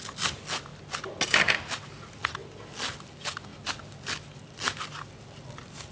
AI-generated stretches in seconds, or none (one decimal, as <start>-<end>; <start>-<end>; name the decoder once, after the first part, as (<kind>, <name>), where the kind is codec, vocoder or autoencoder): none